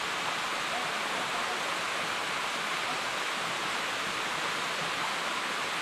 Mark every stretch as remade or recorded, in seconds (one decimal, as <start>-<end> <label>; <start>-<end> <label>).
0.0-5.8 recorded